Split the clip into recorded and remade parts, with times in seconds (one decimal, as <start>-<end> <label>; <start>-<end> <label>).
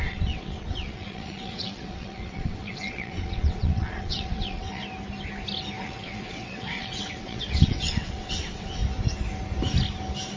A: 0.0-4.8 remade; 4.8-5.8 recorded; 5.8-8.8 remade; 8.8-10.4 recorded